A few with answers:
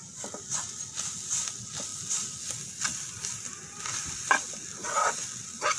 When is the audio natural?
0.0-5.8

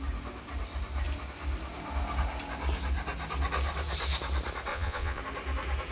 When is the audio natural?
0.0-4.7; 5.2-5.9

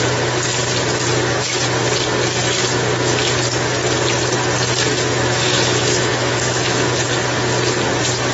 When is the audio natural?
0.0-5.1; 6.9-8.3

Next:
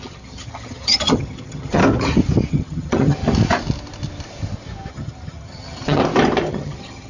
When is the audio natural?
1.8-2.5; 3.2-4.9; 6.0-6.5

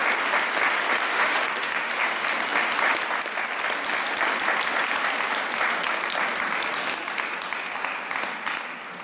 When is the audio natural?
0.0-1.1; 1.9-9.0

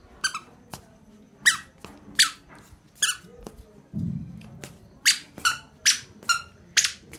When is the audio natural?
0.0-7.2

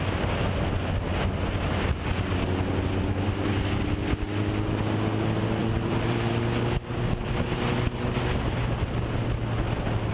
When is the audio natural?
0.0-5.6; 6.3-10.1

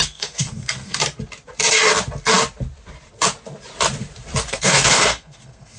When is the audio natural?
1.0-4.5